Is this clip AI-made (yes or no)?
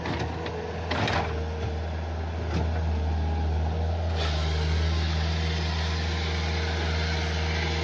no